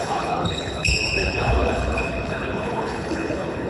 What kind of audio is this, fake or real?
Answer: fake